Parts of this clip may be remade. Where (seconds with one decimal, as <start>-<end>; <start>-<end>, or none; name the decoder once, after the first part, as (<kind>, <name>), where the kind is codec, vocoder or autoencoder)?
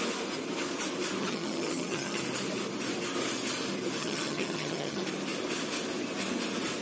1.2-2.2 (vocoder, HiFi-GAN); 4.0-5.0